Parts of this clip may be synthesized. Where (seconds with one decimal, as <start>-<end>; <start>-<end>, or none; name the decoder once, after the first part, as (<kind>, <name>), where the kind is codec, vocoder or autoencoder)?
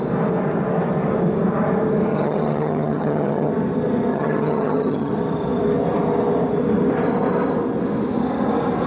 2.1-3.5 (vocoder, HiFi-GAN); 4.1-5.1